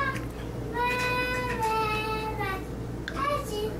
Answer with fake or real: real